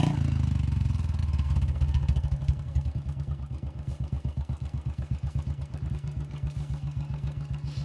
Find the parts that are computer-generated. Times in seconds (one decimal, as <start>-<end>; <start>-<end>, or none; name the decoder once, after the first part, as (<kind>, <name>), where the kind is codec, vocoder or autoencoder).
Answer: 0.0-7.8 (codec, SNAC)